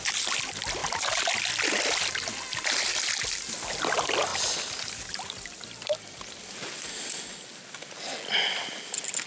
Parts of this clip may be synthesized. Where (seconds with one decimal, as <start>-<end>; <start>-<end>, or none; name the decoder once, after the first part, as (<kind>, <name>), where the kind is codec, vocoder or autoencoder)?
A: none